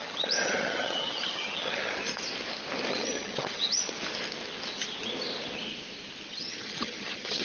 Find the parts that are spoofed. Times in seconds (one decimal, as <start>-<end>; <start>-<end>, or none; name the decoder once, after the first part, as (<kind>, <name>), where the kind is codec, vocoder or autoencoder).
0.0-2.0 (vocoder, HiFi-GAN); 2.9-3.8; 6.3-7.4